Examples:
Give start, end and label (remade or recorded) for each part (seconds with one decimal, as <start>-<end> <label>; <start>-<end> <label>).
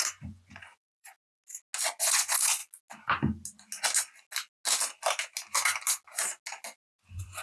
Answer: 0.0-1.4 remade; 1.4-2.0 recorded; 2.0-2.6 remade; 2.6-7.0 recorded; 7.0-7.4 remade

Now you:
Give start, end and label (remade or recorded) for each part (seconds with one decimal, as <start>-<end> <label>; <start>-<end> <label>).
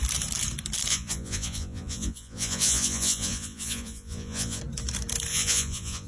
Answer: 0.0-0.9 recorded; 0.9-4.6 remade; 4.6-5.3 recorded; 5.3-6.1 remade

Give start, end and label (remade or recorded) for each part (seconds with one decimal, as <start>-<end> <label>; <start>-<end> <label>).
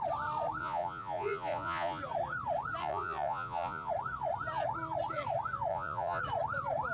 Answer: 0.0-0.6 recorded; 0.6-2.0 remade; 2.0-2.8 recorded; 2.8-3.9 remade; 3.9-5.7 recorded; 5.7-6.2 remade; 6.2-6.9 recorded